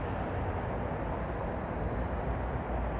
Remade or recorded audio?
recorded